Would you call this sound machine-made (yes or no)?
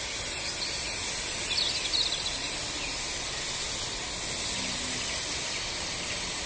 no